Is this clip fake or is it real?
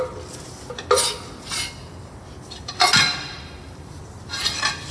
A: real